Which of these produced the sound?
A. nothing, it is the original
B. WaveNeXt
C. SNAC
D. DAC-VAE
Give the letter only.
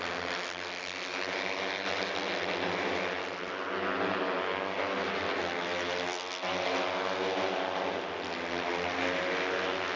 A